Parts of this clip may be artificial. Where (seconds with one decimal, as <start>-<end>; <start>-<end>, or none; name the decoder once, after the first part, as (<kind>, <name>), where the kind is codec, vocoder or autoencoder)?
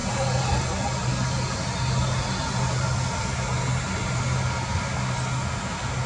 none